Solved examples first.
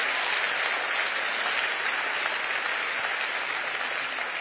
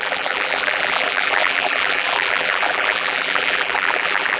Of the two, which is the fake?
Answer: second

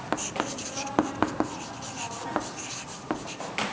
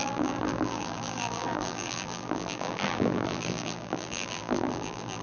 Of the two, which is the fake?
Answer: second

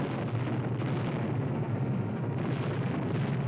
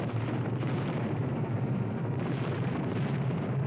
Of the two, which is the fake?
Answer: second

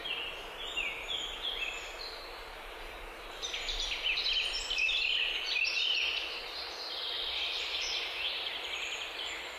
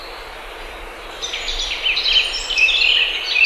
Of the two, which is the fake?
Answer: first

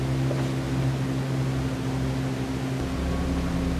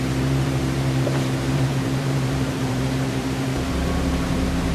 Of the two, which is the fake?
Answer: second